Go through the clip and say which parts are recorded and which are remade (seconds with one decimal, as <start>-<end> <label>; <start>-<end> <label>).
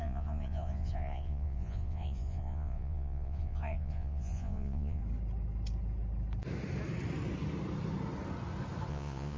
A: 0.0-5.0 remade; 5.0-8.9 recorded; 8.9-9.4 remade